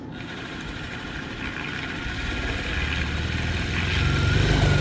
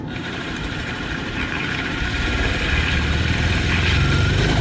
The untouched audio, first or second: first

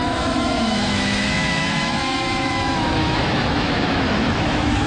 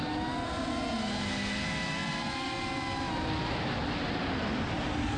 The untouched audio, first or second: second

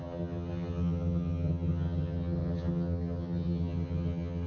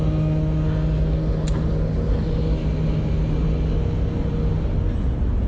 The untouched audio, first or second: second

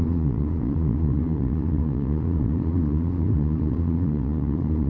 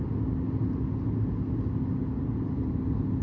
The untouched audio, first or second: second